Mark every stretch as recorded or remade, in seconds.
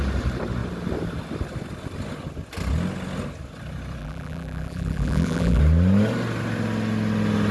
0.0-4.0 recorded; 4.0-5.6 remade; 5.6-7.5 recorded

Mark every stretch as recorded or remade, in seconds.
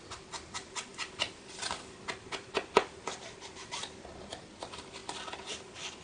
0.0-5.0 recorded; 5.0-5.6 remade; 5.6-6.0 recorded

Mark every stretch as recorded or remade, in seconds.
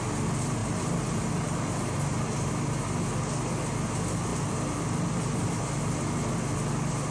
0.0-0.6 recorded; 0.6-2.5 remade; 2.5-4.3 recorded; 4.3-5.8 remade; 5.8-7.1 recorded